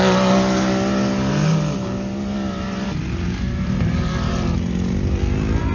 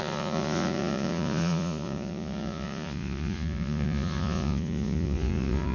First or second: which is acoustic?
first